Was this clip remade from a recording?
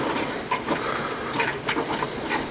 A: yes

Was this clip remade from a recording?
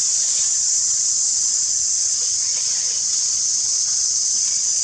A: yes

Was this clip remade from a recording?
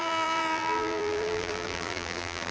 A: yes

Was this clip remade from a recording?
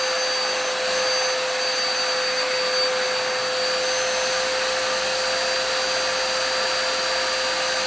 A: no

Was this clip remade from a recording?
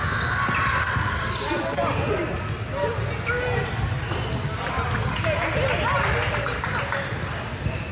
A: no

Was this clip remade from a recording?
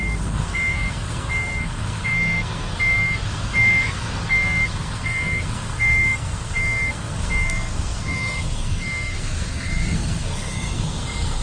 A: yes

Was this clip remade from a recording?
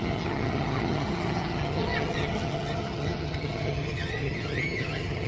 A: yes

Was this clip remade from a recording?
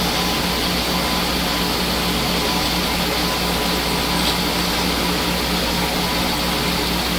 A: no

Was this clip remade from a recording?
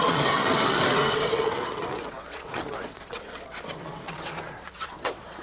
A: yes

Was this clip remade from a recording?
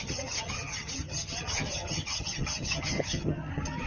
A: yes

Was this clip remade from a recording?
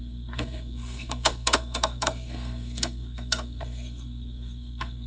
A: yes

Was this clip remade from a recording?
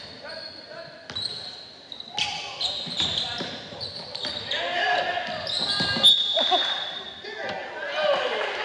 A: no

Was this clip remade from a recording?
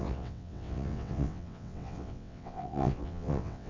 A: yes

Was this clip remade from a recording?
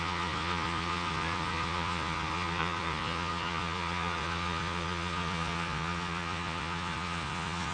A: yes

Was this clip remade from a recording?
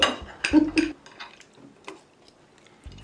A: no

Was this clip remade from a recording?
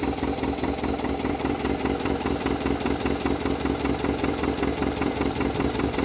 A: yes